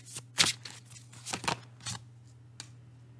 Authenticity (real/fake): real